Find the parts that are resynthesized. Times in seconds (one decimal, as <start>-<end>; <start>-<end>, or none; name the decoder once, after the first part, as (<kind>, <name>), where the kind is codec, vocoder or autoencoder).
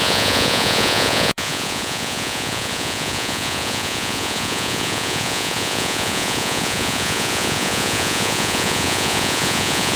0.0-10.0 (vocoder, Vocos)